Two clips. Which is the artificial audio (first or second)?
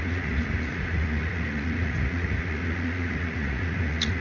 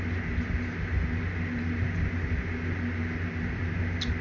first